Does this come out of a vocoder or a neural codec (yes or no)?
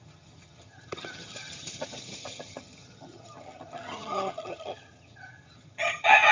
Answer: yes